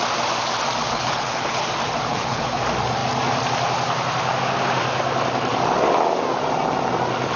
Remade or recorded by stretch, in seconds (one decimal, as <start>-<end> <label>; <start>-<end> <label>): 0.0-0.9 recorded; 0.9-1.6 remade; 1.6-2.1 recorded; 2.1-2.6 remade; 2.6-7.4 recorded